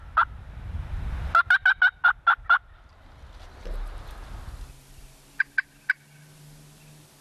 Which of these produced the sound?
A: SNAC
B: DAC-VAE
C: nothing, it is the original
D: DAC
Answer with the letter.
C